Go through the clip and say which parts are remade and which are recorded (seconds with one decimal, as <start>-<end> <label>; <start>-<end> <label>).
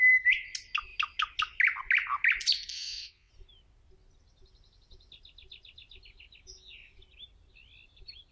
0.0-2.7 recorded; 2.7-3.3 remade; 3.3-8.3 recorded